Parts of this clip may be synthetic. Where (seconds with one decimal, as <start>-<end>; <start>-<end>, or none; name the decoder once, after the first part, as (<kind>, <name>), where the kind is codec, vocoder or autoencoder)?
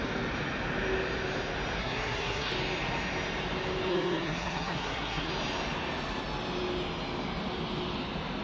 1.8-2.5 (codec, SNAC); 3.9-5.3